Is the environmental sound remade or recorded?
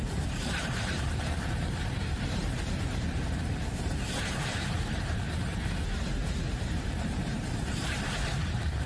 remade